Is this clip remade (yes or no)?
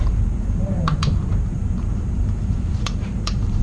yes